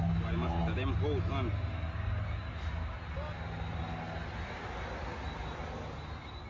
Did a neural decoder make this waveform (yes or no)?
no